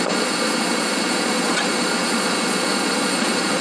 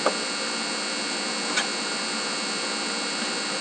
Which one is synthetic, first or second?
first